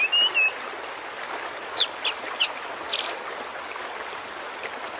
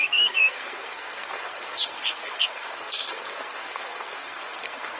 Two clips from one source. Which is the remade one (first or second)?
second